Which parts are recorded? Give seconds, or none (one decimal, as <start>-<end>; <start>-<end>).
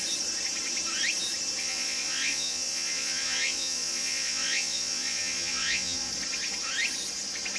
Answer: 0.0-1.6; 6.1-7.6